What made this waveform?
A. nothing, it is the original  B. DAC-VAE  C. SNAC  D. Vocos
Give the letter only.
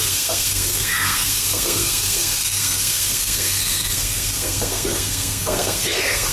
C